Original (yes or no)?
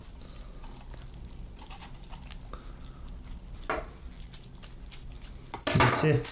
yes